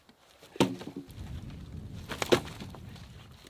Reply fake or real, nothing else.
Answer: real